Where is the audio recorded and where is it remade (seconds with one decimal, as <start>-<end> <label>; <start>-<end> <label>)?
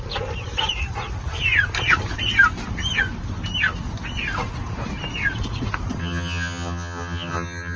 0.0-6.0 recorded; 6.0-7.8 remade